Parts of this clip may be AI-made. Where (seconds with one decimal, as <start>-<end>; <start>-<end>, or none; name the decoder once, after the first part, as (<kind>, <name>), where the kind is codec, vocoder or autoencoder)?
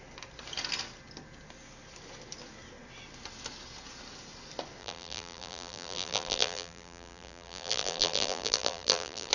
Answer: 4.8-9.3 (vocoder, BigVGAN v2)